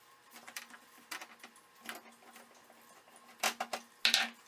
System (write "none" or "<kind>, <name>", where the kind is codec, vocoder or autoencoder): none